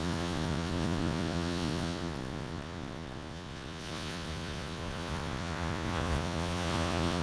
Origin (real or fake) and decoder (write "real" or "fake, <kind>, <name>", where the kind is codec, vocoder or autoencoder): fake, vocoder, Vocos